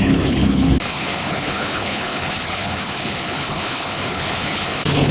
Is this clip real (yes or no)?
no